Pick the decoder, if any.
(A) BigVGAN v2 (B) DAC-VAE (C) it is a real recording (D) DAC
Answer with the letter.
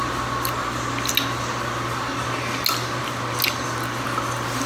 C